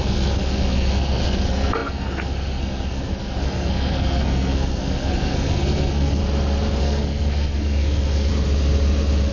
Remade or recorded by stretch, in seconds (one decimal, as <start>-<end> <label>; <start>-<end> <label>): 0.0-6.2 remade; 6.2-6.8 recorded; 6.8-8.3 remade; 8.3-9.3 recorded